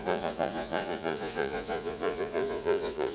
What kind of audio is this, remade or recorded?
remade